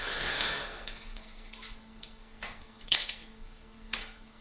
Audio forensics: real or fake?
fake